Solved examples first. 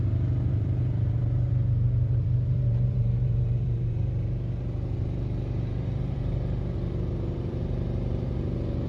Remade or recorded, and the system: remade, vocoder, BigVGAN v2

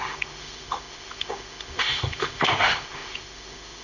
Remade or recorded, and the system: remade, autoencoder, DAC-VAE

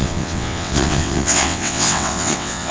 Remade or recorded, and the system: remade, vocoder, WaveNeXt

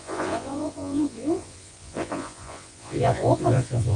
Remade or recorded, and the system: remade, vocoder, Vocos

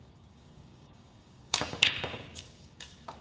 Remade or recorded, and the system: remade, codec, DAC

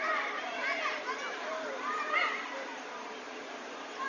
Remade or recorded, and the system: remade, vocoder, BigVGAN v2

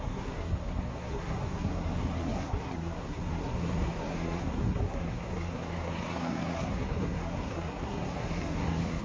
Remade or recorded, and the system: remade, codec, SNAC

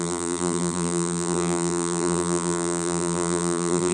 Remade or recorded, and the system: remade, vocoder, BigVGAN v2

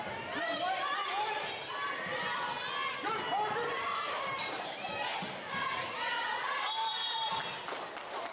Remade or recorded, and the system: recorded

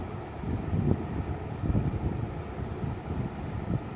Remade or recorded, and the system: recorded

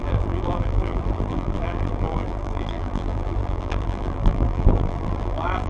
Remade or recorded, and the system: remade, vocoder, BigVGAN v2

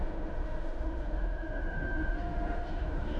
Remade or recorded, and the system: remade, autoencoder, DAC-VAE